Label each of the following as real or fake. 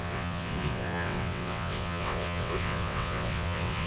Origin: fake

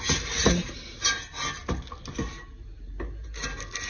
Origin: real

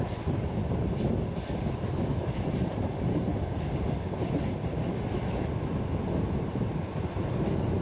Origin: real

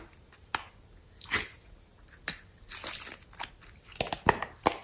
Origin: real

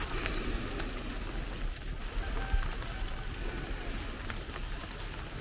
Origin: real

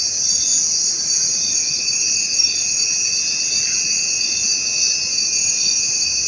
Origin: real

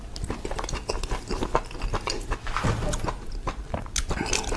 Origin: real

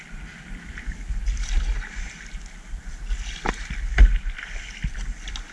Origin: real